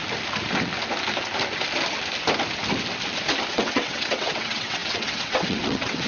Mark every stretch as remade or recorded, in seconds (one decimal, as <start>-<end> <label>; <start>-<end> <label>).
0.0-3.5 recorded; 3.5-6.1 remade